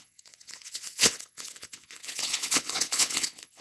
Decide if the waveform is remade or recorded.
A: remade